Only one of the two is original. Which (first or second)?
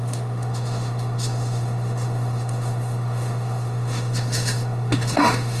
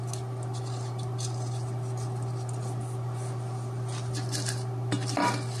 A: second